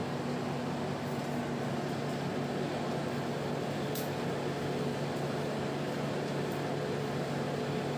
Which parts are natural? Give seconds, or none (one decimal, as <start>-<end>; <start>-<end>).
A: 2.8-8.0